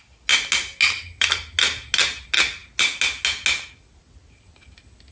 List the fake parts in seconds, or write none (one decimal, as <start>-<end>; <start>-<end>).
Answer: none